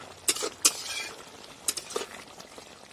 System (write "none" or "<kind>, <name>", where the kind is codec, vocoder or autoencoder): none